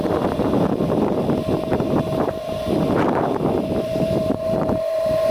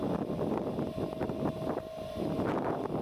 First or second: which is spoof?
first